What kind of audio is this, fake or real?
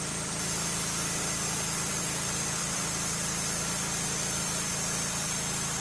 fake